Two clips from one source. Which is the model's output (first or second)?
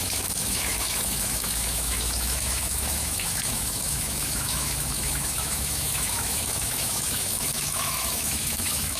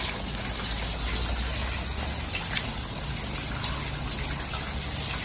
first